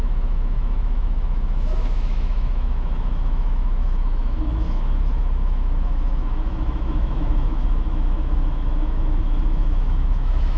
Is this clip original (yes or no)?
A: no